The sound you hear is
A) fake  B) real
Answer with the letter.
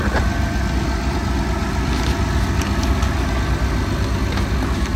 B